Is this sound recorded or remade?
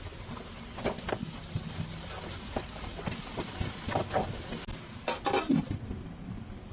recorded